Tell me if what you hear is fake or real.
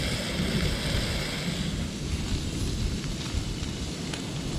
real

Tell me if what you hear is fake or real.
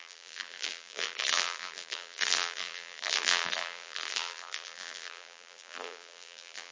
fake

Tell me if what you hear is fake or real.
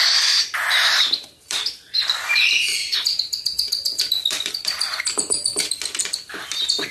fake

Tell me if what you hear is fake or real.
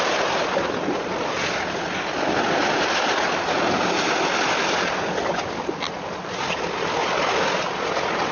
real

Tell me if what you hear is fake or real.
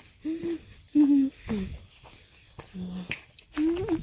real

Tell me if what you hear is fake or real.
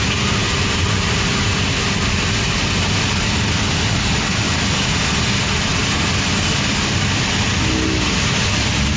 real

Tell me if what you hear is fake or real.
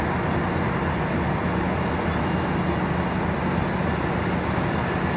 real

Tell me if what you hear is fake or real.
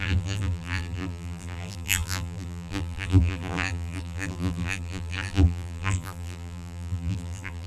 fake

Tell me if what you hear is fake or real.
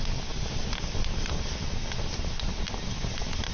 real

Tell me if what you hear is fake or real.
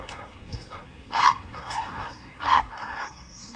fake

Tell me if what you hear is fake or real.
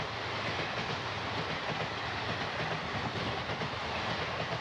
real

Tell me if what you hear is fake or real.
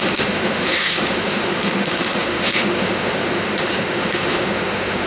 fake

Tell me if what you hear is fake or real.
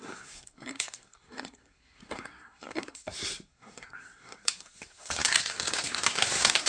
fake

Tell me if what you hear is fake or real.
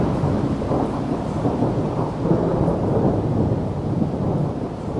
real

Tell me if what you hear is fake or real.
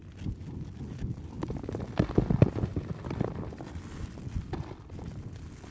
real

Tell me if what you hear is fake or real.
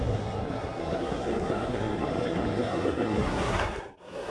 fake